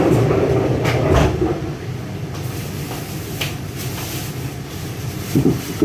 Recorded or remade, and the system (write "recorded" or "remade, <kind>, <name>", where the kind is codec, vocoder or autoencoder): recorded